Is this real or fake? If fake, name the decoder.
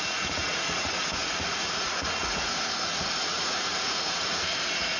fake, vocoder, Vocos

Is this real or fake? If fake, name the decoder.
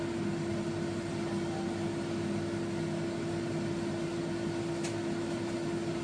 real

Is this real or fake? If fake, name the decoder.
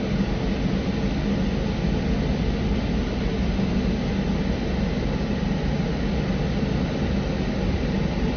real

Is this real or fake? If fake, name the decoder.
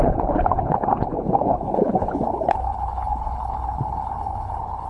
fake, codec, HILCodec